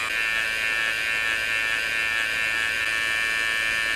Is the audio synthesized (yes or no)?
no